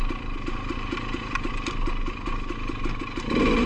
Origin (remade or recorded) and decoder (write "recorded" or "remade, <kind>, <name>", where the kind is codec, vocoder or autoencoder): recorded